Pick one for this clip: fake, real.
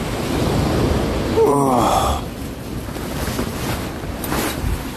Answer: real